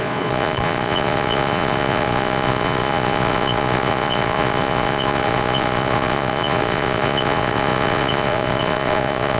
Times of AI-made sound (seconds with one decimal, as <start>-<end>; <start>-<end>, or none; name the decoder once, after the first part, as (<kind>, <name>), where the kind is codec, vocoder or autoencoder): 0.0-9.4 (vocoder, Vocos)